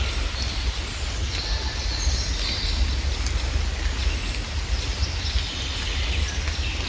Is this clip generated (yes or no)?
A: no